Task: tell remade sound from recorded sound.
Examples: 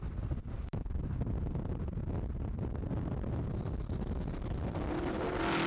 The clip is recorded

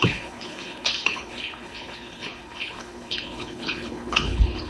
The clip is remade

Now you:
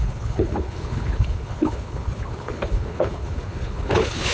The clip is remade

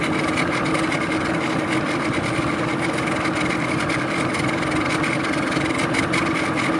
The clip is recorded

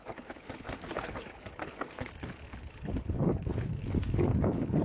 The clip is remade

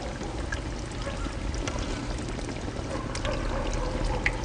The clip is recorded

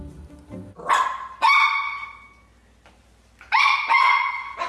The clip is recorded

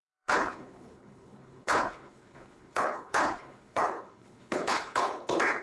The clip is remade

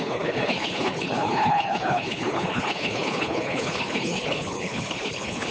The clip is remade